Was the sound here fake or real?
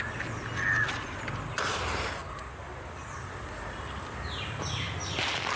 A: real